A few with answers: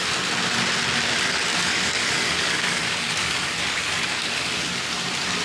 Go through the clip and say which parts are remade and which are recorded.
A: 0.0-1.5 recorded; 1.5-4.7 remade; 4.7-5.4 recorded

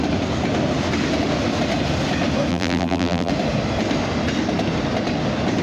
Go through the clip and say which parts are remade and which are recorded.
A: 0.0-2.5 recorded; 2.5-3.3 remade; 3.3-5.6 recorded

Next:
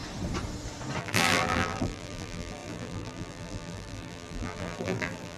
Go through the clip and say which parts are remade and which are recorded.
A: 0.0-1.0 recorded; 1.0-5.4 remade

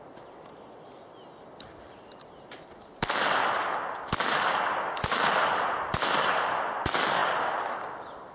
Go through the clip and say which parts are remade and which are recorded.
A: 0.0-8.3 recorded